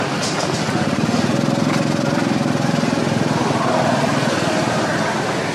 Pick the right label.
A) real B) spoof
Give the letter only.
A